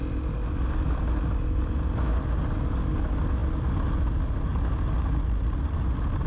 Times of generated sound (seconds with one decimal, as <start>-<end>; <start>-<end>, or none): none